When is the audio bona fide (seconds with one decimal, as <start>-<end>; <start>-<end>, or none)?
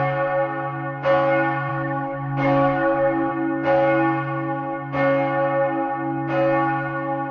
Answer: 0.0-1.7; 3.3-7.3